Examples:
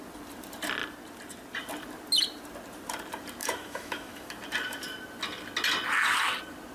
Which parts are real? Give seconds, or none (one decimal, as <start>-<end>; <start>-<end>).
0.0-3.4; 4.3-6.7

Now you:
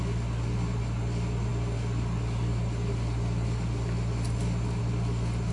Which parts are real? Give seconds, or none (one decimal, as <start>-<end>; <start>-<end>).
0.0-5.5

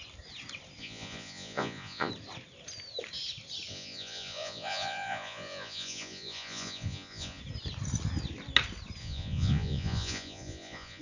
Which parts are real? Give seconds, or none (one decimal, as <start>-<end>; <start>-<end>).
0.0-0.8; 2.1-3.7; 7.4-9.0